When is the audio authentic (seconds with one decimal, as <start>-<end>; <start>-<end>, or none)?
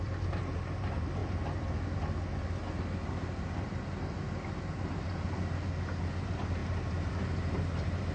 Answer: 1.2-6.1